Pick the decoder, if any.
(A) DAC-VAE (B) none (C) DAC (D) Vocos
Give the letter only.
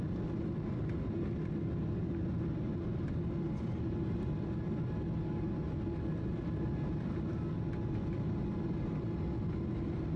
B